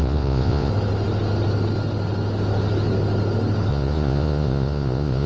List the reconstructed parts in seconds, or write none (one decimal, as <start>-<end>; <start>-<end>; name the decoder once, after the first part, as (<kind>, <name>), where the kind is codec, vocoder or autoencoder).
0.0-0.7 (vocoder, Vocos); 3.7-5.3